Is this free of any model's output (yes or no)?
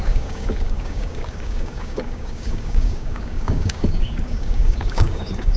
no